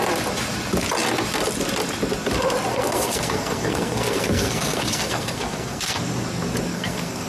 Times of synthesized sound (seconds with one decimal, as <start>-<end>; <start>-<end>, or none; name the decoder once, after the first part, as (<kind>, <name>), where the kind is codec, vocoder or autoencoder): 2.7-6.0 (codec, SNAC); 6.7-7.3